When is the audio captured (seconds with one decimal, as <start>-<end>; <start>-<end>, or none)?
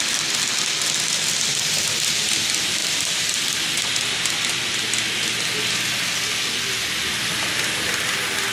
0.0-8.5